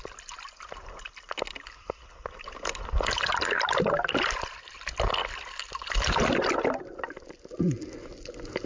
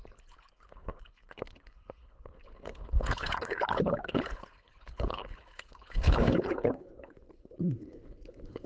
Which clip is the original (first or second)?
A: first